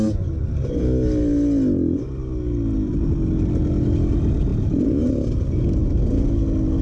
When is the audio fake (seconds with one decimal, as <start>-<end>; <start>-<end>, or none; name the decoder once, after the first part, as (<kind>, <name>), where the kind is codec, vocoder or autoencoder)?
none